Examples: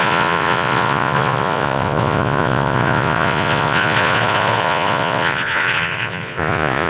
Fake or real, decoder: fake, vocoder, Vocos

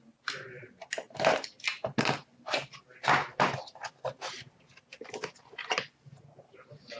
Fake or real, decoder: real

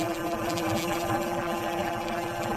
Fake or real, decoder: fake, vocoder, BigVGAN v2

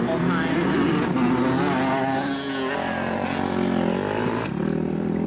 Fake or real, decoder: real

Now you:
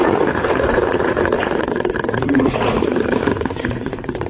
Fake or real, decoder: fake, vocoder, Vocos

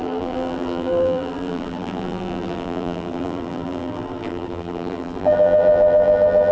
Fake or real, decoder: fake, vocoder, BigVGAN v2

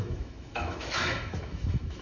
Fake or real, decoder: fake, autoencoder, DAC-VAE